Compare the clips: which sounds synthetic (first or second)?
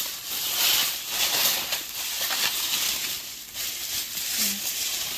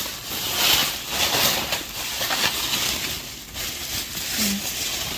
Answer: first